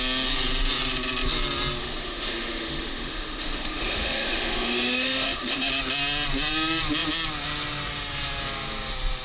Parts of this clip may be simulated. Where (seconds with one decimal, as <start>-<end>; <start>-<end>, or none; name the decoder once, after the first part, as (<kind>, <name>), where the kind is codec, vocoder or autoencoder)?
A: 1.8-5.7 (autoencoder, DAC-VAE)